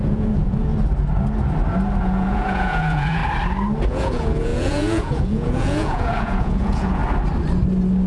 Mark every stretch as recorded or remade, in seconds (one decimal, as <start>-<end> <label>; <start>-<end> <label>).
0.0-0.7 remade; 0.7-2.0 recorded; 2.0-3.2 remade; 3.2-3.9 recorded; 3.9-7.0 remade; 7.0-8.1 recorded